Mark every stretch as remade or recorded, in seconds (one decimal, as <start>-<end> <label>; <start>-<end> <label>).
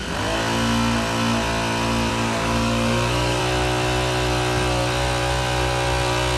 0.0-2.1 recorded; 2.1-3.4 remade; 3.4-6.4 recorded